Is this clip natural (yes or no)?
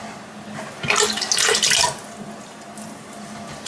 yes